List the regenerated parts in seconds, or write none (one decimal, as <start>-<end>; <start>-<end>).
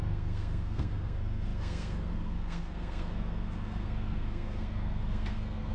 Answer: 0.0-5.7